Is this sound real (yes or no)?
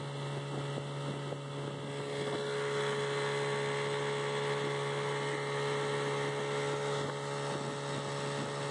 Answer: yes